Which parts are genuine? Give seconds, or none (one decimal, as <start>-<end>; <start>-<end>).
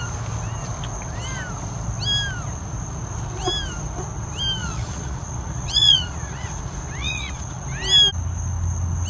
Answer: 0.0-4.6; 6.6-7.0; 7.6-9.1